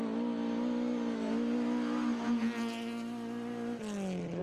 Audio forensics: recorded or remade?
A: recorded